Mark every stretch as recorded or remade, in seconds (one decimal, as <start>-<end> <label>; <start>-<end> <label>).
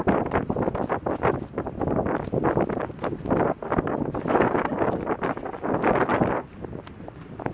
0.0-7.5 recorded